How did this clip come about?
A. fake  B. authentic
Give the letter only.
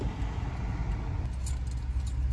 B